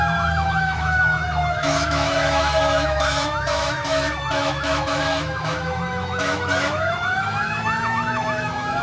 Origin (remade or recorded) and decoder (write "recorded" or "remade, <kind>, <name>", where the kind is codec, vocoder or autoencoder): remade, autoencoder, DAC-VAE